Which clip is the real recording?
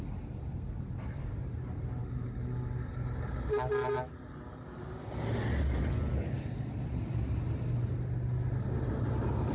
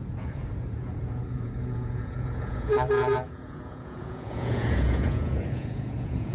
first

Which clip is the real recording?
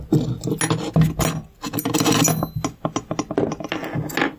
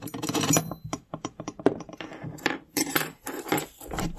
first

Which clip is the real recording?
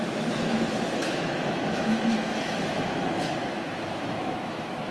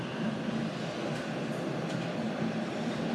second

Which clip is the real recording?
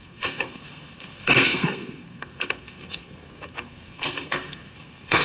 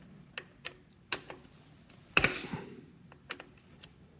second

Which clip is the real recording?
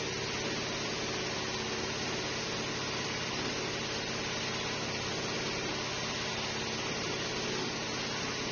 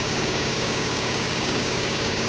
first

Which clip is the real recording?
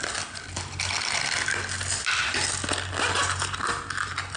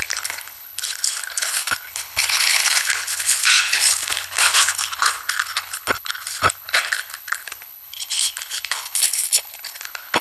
first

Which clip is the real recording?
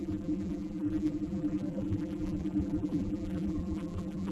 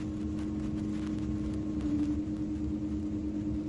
second